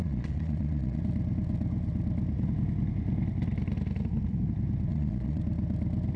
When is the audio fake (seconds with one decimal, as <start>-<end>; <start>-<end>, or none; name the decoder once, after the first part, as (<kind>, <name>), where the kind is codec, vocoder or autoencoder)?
0.0-1.0 (vocoder, Vocos); 4.9-5.4